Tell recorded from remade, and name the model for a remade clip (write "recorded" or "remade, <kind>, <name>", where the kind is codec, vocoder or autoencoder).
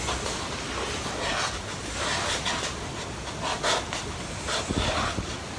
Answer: recorded